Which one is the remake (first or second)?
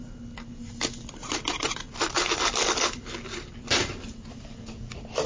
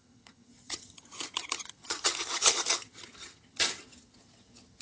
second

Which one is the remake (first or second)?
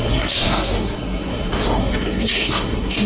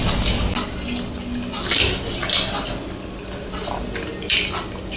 first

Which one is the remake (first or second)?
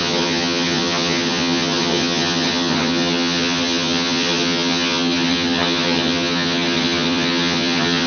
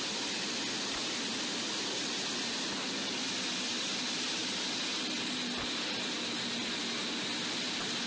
first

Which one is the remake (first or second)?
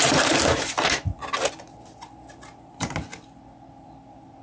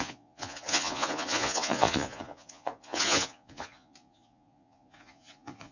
second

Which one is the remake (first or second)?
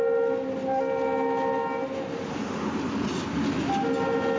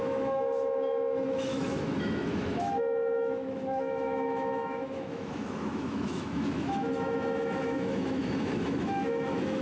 second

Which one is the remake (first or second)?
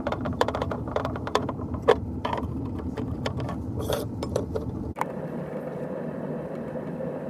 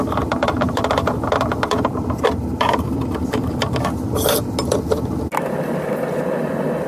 first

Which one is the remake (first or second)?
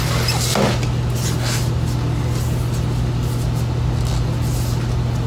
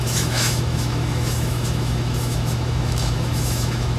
second